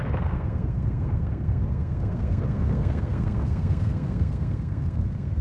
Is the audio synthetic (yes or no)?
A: yes